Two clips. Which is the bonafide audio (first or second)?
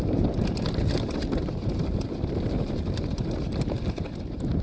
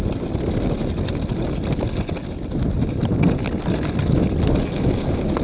second